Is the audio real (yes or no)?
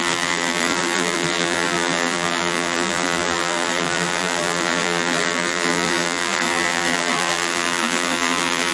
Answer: no